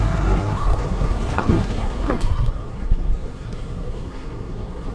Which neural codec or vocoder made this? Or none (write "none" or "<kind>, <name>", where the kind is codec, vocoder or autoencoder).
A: codec, SNAC